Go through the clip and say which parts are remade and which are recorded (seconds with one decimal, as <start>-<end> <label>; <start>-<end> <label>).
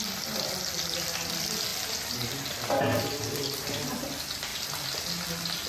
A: 0.0-4.5 recorded; 4.5-5.0 remade; 5.0-5.7 recorded